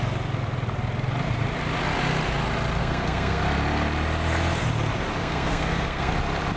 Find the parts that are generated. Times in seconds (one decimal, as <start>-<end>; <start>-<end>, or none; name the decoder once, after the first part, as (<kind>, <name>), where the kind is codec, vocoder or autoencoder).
2.8-3.4 (codec, SNAC); 5.2-6.1